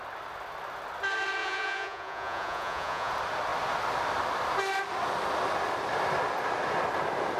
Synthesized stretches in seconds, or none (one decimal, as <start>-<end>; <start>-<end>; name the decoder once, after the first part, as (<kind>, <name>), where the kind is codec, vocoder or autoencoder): 1.4-3.1 (vocoder, Vocos)